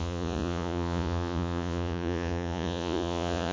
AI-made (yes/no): yes